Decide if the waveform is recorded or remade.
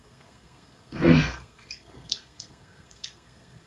remade